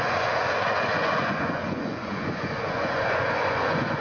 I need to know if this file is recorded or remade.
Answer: remade